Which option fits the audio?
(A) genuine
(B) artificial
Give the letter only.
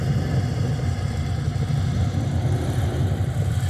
A